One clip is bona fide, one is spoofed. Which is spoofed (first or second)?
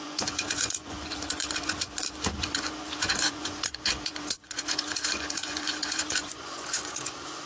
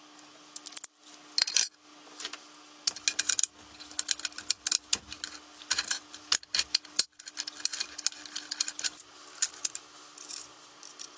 first